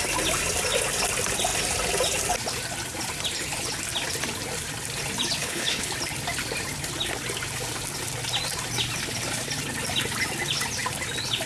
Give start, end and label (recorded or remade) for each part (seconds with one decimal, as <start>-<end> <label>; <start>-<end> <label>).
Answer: 0.0-5.4 recorded; 5.4-5.9 remade; 5.9-11.5 recorded